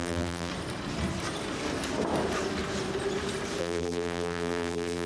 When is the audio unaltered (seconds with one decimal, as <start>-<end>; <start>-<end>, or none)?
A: 0.5-3.6